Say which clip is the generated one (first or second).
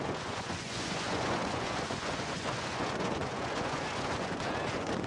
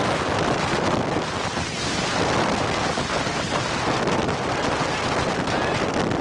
first